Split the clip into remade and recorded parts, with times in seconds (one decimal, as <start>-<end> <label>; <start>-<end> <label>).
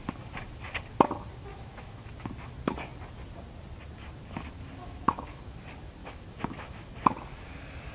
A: 0.0-1.5 recorded; 1.5-2.1 remade; 2.1-4.8 recorded; 4.8-5.4 remade; 5.4-6.0 recorded; 6.0-6.9 remade; 6.9-7.9 recorded